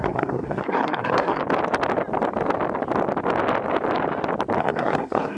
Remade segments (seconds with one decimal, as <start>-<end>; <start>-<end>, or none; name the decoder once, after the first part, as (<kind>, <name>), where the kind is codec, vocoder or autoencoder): 0.0-1.4 (codec, SNAC); 4.6-5.4